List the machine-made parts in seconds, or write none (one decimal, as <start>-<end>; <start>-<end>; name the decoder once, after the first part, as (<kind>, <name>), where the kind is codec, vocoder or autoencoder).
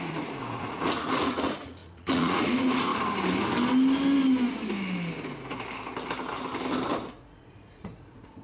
0.0-2.9 (vocoder, Vocos); 7.1-8.4